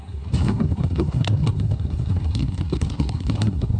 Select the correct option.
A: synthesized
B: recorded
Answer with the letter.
A